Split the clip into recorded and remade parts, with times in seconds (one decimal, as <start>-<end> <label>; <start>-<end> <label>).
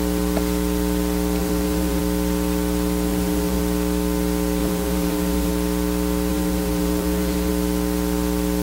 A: 0.0-1.4 recorded; 1.4-2.0 remade; 2.0-3.1 recorded; 3.1-3.6 remade; 3.6-4.6 recorded; 4.6-5.5 remade; 5.5-6.3 recorded; 6.3-7.5 remade; 7.5-8.6 recorded